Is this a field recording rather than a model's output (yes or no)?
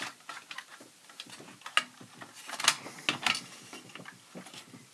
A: yes